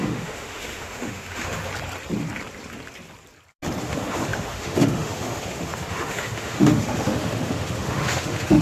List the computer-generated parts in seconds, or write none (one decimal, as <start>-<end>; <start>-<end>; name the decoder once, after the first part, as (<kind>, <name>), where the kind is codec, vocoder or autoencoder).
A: 0.0-1.7 (autoencoder, DAC-VAE); 3.8-8.6